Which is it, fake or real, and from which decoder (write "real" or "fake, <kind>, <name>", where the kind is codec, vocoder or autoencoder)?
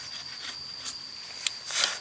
real